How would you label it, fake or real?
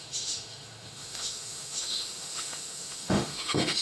fake